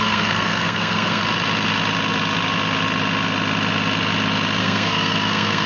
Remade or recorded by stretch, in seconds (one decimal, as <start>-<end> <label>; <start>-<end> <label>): 0.0-1.2 remade; 1.2-4.6 recorded; 4.6-5.7 remade